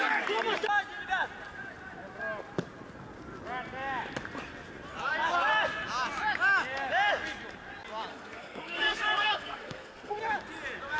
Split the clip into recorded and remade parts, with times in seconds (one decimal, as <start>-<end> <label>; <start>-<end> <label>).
0.0-8.1 recorded; 8.1-10.2 remade; 10.2-11.0 recorded

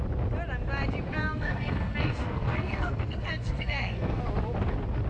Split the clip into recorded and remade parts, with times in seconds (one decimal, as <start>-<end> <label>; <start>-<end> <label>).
0.0-1.1 recorded; 1.1-4.2 remade; 4.2-5.1 recorded

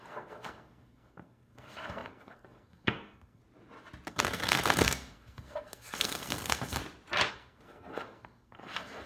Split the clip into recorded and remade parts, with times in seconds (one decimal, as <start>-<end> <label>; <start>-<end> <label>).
0.0-3.4 remade; 3.4-4.1 recorded; 4.1-6.8 remade; 6.8-7.3 recorded; 7.3-9.1 remade

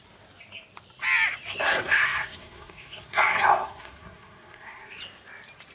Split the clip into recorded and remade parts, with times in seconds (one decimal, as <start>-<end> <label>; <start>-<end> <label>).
0.0-1.6 recorded; 1.6-5.0 remade; 5.0-5.7 recorded

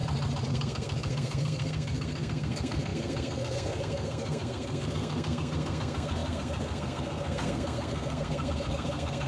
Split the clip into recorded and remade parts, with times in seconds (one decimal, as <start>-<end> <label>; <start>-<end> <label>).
0.0-0.5 recorded; 0.5-9.3 remade

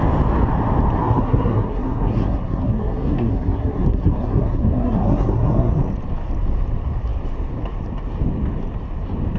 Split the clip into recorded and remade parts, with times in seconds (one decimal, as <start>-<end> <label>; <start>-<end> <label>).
0.0-1.0 recorded; 1.0-5.7 remade; 5.7-9.4 recorded

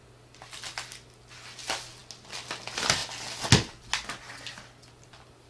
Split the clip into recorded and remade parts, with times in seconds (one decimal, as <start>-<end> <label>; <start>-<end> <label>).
0.0-5.5 recorded

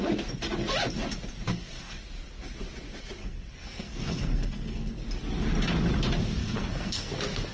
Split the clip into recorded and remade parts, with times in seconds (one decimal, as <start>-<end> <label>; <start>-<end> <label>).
0.0-1.5 recorded; 1.5-2.0 remade; 2.0-3.2 recorded; 3.2-4.9 remade; 4.9-6.4 recorded; 6.4-7.1 remade; 7.1-7.5 recorded